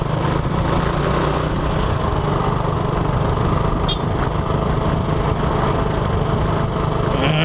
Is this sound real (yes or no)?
yes